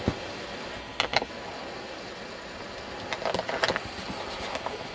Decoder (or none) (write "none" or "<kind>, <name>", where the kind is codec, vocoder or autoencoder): none